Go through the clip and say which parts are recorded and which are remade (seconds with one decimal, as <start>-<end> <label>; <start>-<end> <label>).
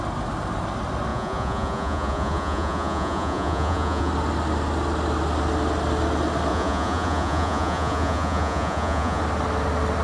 0.0-1.1 recorded; 1.1-4.1 remade; 4.1-6.5 recorded; 6.5-9.2 remade; 9.2-10.0 recorded